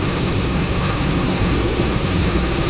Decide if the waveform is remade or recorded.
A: remade